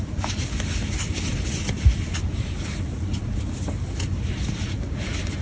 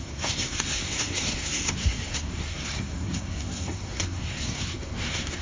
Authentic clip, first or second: first